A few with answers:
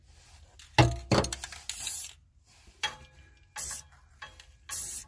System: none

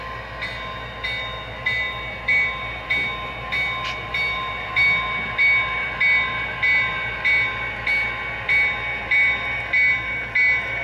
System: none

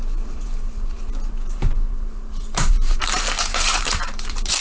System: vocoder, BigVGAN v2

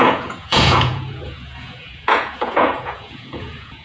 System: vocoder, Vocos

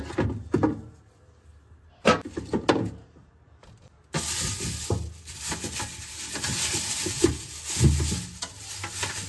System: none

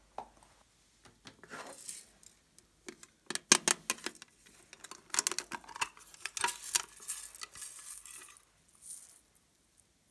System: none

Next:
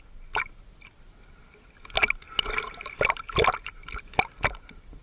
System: none